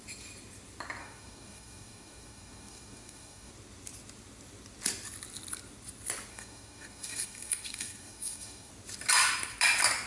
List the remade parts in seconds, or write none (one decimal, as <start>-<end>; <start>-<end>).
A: 1.0-3.5; 6.3-8.7